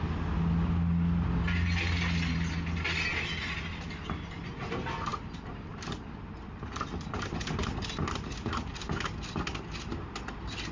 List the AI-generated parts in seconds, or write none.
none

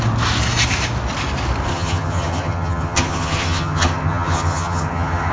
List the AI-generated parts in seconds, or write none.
1.7-5.3

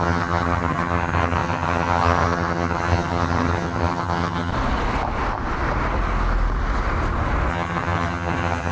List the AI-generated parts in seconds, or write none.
0.0-4.5; 7.5-8.7

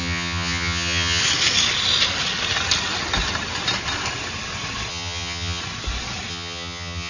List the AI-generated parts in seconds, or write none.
0.0-1.2; 4.9-5.6; 6.3-7.1

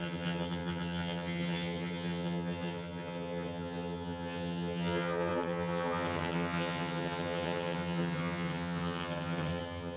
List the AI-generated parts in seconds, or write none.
0.0-10.0

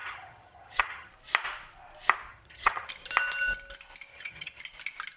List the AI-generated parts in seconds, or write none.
0.0-1.1; 2.3-2.9; 4.1-4.6

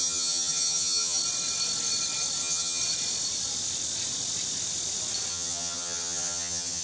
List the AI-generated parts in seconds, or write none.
0.0-1.2; 2.4-2.8; 5.3-6.8